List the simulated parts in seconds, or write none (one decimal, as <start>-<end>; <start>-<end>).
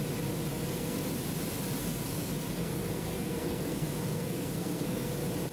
0.5-1.0; 1.8-5.1